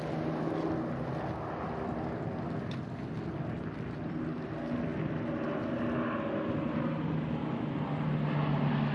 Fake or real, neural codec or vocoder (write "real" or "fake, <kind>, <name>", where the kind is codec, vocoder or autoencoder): real